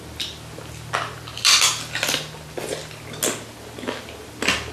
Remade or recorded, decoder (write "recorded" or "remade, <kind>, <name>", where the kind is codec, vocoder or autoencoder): recorded